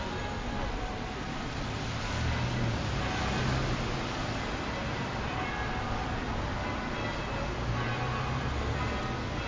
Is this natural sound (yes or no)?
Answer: yes